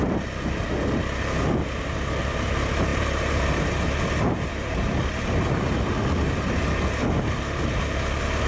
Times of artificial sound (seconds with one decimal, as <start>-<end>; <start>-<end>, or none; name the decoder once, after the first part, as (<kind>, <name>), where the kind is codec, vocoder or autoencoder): none